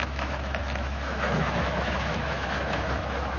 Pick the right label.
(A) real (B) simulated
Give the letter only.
B